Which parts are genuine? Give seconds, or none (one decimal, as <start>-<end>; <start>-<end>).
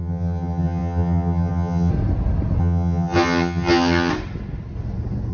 1.9-2.6; 4.1-5.3